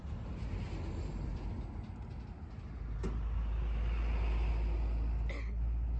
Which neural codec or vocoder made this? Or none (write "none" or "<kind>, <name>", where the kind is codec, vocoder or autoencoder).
none